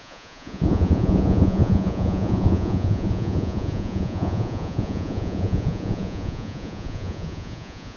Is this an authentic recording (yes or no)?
no